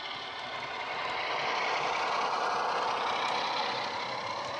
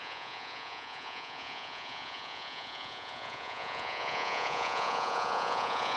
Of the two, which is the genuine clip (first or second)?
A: first